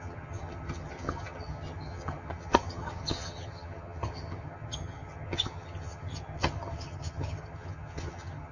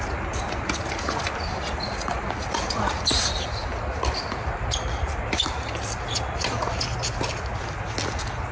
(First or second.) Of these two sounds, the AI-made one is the first